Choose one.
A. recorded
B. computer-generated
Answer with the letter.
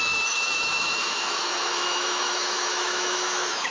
B